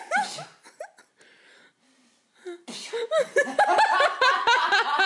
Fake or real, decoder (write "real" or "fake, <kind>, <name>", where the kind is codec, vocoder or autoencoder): real